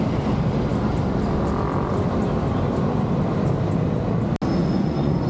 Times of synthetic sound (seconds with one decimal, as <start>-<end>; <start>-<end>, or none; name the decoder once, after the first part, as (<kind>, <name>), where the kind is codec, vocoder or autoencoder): 4.6-5.3 (vocoder, Vocos)